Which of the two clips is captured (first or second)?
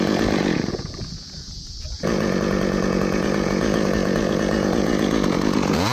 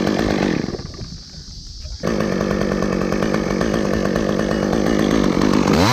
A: second